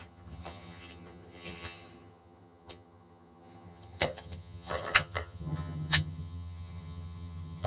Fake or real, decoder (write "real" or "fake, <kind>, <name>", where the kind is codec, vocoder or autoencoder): fake, vocoder, HiFi-GAN